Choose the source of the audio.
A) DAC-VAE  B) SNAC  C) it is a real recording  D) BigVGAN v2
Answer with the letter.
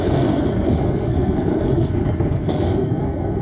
B